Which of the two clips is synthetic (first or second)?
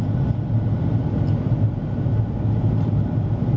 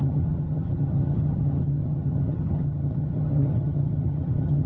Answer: second